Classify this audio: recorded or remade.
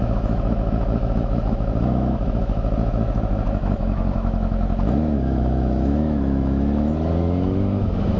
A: remade